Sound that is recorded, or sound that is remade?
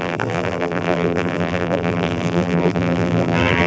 remade